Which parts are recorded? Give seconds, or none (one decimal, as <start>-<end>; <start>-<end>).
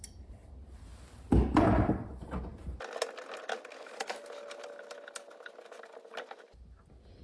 0.0-7.2